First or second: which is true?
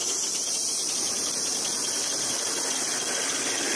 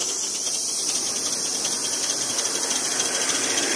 second